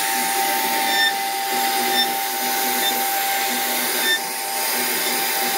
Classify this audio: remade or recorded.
recorded